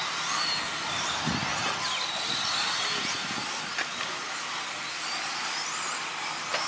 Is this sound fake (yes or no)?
no